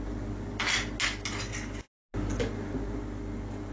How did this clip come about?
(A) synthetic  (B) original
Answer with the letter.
B